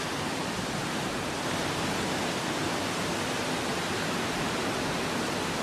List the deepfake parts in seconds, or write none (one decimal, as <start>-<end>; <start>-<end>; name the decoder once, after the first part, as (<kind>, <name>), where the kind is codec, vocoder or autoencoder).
0.8-2.3 (vocoder, BigVGAN v2)